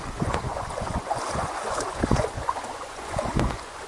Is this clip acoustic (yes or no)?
no